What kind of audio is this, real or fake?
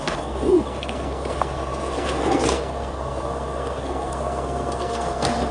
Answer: fake